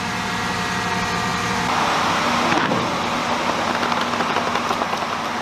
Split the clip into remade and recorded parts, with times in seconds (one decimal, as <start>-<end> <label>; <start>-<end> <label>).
0.0-5.4 recorded